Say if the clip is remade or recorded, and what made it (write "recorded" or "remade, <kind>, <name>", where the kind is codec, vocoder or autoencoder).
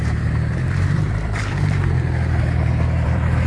remade, vocoder, BigVGAN v2